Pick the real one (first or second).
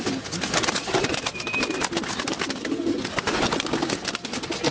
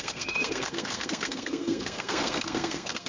first